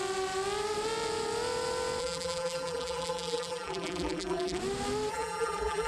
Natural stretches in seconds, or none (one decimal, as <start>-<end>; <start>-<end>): 0.0-2.0; 4.6-5.1